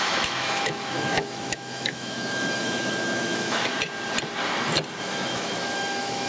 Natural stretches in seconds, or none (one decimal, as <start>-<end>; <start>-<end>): 3.7-5.0